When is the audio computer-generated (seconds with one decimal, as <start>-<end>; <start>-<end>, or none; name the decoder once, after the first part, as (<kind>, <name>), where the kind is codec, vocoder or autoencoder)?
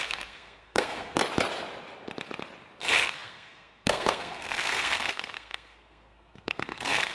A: 0.0-1.2 (codec, SNAC); 2.8-7.1